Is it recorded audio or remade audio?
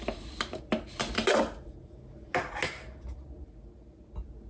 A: recorded